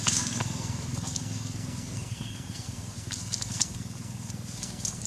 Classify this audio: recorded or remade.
remade